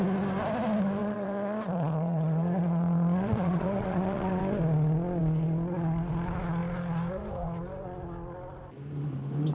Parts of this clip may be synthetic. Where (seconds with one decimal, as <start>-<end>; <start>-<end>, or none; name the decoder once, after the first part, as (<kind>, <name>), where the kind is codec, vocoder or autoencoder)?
1.0-4.4 (vocoder, Vocos)